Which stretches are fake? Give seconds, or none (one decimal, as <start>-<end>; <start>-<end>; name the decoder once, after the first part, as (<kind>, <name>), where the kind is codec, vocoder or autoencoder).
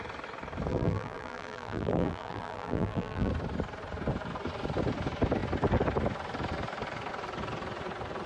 0.7-3.3 (vocoder, BigVGAN v2)